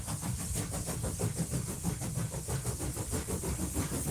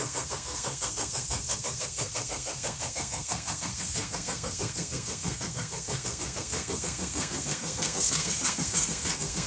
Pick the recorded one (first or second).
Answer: first